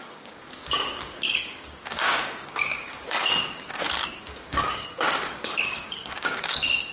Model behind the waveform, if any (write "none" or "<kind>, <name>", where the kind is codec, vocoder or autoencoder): codec, DAC